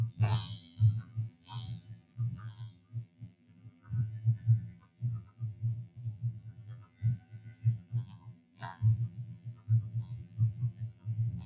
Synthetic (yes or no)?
yes